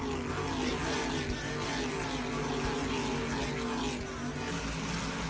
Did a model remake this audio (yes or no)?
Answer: no